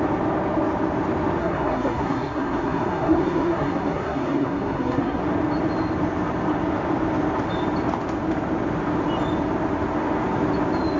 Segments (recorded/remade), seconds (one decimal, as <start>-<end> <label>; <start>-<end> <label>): 0.0-1.4 recorded; 1.4-5.2 remade; 5.2-11.0 recorded